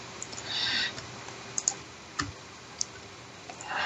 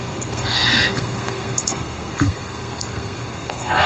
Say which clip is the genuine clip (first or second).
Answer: first